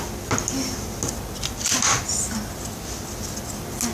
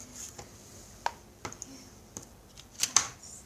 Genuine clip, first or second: first